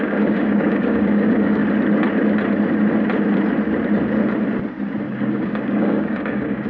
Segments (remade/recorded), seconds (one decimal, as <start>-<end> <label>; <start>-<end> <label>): 0.0-1.6 remade; 1.6-5.0 recorded; 5.0-6.7 remade